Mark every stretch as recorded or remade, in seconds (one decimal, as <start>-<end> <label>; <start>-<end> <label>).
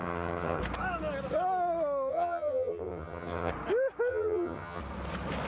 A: 0.0-0.6 remade; 0.6-2.1 recorded; 2.1-3.5 remade; 3.5-4.1 recorded; 4.1-4.8 remade; 4.8-5.5 recorded